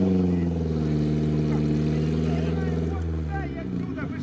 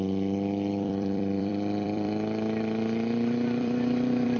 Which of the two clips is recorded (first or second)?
first